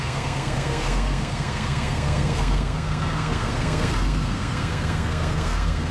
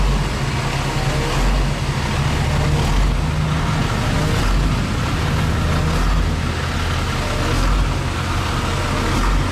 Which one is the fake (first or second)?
first